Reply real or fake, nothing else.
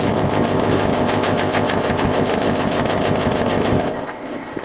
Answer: fake